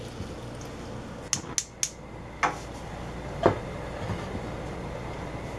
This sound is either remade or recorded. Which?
recorded